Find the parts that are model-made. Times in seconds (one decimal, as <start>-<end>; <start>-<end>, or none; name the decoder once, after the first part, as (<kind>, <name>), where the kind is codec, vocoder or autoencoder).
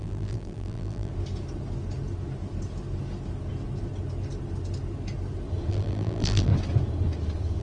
0.0-1.1 (vocoder, BigVGAN v2); 5.7-6.5